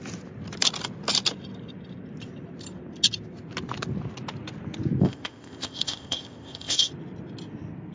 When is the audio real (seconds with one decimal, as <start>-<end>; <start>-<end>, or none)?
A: 0.0-5.0; 6.9-7.9

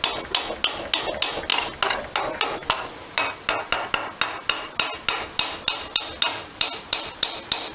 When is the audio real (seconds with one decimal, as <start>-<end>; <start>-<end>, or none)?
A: 0.0-7.7